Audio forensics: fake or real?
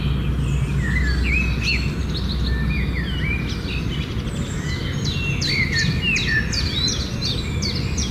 real